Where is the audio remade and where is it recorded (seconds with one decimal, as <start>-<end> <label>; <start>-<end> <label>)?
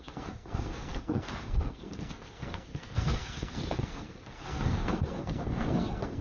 0.0-6.2 remade